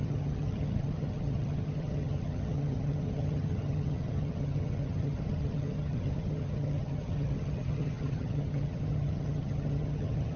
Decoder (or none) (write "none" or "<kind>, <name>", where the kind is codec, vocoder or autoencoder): vocoder, HiFi-GAN